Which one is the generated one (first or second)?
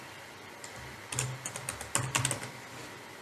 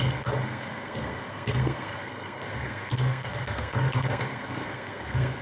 second